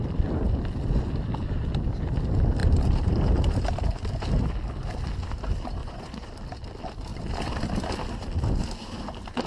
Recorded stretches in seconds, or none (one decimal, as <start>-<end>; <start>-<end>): 0.0-5.8; 6.3-9.5